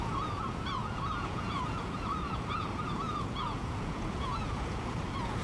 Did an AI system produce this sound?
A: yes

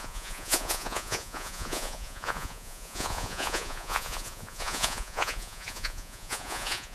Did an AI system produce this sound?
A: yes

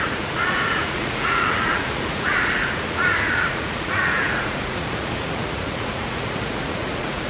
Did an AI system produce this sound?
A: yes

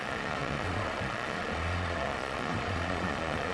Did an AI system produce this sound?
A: yes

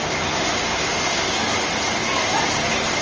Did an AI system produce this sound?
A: no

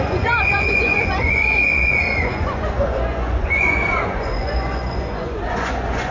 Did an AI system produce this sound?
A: yes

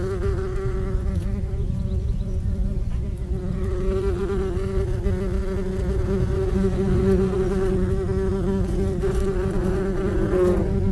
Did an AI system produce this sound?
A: yes